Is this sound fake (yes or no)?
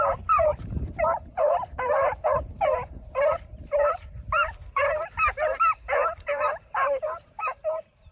yes